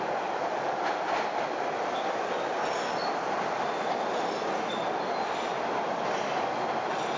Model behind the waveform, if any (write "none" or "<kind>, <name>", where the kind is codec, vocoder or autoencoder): none